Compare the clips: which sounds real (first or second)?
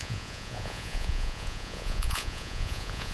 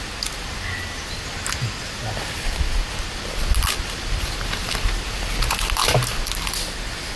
second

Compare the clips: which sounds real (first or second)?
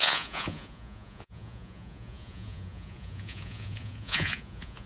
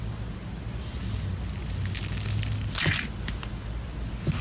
second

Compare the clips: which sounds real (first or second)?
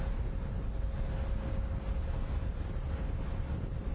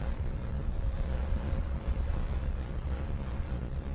first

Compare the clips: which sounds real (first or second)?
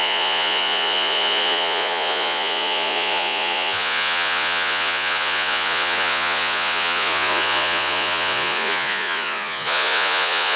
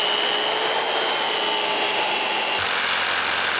second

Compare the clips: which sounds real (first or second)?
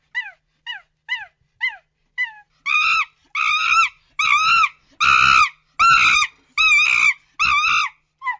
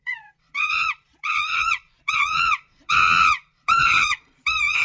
first